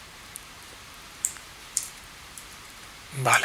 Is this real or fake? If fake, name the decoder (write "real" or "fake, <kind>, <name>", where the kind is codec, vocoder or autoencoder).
fake, vocoder, BigVGAN v2